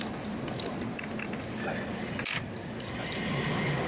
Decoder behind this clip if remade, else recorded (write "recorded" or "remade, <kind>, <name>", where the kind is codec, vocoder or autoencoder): recorded